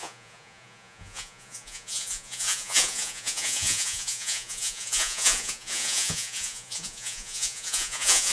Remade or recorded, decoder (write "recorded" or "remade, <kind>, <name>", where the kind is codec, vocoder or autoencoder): remade, vocoder, Vocos